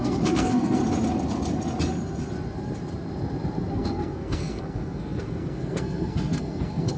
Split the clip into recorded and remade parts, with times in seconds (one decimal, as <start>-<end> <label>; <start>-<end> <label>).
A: 0.0-0.8 remade; 0.8-3.7 recorded; 3.7-7.0 remade